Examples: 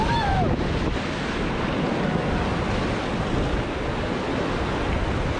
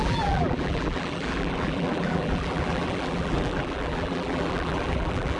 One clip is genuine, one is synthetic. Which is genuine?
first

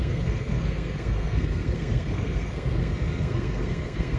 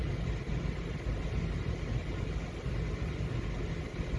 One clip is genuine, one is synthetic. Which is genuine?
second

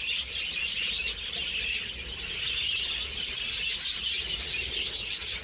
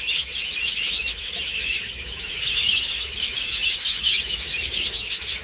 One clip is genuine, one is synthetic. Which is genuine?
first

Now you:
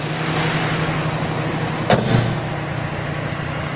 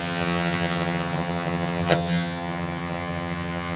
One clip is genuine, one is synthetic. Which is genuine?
first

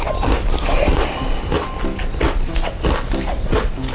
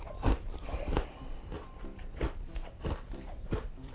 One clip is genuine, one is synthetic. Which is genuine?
first